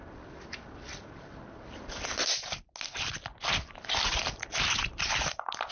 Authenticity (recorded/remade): recorded